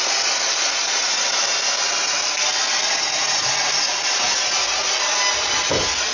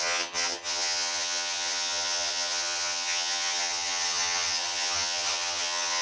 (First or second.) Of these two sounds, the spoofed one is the second